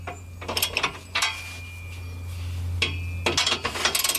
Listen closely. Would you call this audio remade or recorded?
recorded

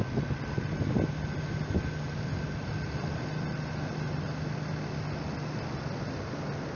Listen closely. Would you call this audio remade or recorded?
recorded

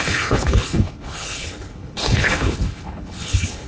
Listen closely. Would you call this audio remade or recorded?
remade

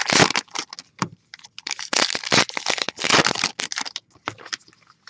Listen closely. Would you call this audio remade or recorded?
recorded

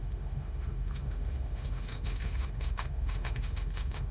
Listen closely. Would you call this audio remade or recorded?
remade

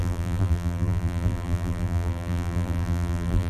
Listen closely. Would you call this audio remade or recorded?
remade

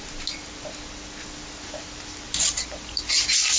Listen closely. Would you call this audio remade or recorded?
recorded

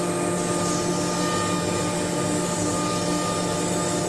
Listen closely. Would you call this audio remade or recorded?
recorded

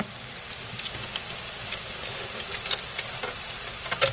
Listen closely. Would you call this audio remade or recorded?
recorded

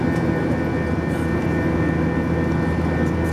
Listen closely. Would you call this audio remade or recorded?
recorded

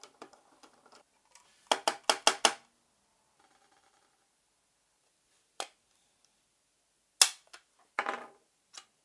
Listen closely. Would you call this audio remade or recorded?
recorded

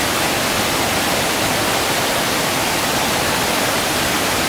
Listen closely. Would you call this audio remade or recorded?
recorded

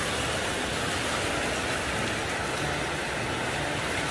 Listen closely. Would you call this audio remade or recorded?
recorded